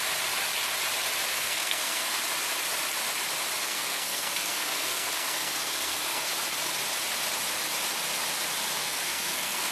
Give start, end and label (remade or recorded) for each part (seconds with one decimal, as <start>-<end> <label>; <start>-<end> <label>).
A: 0.0-1.3 recorded; 1.3-2.2 remade; 2.2-3.6 recorded; 3.6-6.3 remade; 6.3-8.8 recorded; 8.8-9.7 remade